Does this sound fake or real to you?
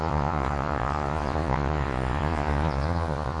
fake